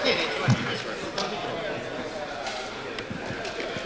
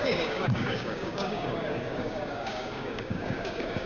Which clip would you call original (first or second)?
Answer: first